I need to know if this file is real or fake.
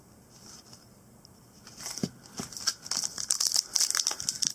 real